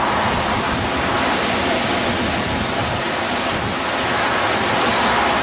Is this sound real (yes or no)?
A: yes